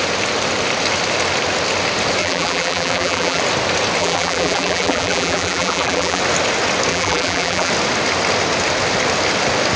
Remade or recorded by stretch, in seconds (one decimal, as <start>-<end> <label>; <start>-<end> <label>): 0.0-2.2 recorded; 2.2-3.4 remade; 3.4-4.0 recorded; 4.0-6.2 remade; 6.2-6.9 recorded; 6.9-7.7 remade; 7.7-9.8 recorded